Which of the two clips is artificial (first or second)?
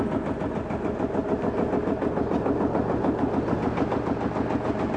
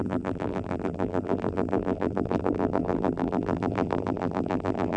second